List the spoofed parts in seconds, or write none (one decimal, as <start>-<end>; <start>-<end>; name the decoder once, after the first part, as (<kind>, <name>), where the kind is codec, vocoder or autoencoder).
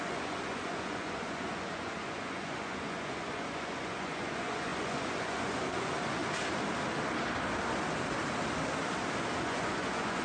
0.0-6.2 (vocoder, Vocos); 9.4-10.2